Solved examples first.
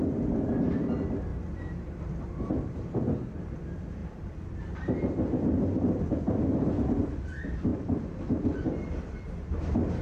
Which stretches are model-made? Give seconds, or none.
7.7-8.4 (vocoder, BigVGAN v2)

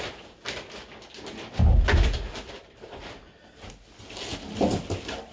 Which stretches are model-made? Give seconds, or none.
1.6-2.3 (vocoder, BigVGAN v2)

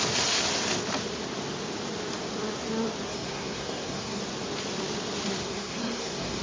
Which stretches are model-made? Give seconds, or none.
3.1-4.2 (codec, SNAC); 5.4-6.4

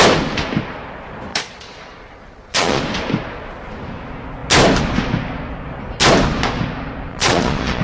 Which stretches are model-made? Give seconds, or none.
1.3-2.8 (vocoder, Vocos); 7.1-7.8

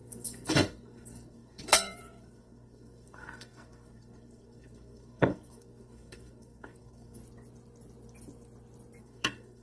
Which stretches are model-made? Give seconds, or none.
0.0-7.2 (codec, SNAC); 9.0-9.6